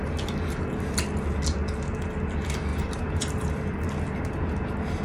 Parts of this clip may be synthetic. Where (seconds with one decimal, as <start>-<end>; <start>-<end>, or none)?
2.7-3.5